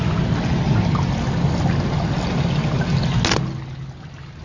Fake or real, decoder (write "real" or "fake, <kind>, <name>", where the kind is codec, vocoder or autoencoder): real